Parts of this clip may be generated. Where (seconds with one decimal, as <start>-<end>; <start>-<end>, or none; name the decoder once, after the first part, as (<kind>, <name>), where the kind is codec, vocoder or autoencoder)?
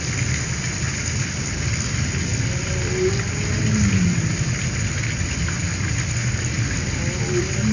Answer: 2.3-4.9 (vocoder, BigVGAN v2)